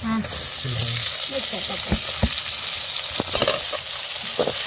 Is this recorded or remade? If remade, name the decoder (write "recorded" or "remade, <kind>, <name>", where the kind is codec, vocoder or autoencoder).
recorded